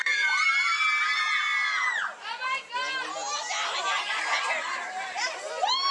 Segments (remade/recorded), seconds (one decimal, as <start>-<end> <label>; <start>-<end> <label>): 0.0-5.9 recorded